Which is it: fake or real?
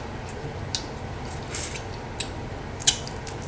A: real